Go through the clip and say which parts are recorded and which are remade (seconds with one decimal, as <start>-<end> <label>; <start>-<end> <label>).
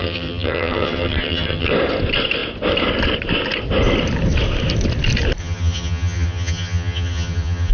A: 0.0-1.7 remade; 1.7-5.4 recorded; 5.4-7.7 remade